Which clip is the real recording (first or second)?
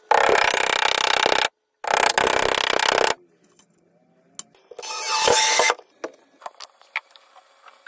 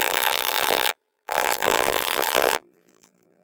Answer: first